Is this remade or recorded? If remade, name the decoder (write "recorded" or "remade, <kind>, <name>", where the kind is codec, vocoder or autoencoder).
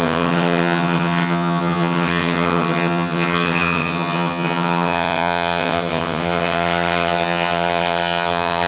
remade, vocoder, HiFi-GAN